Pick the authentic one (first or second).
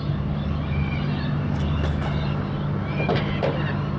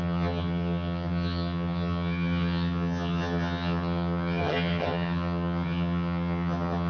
first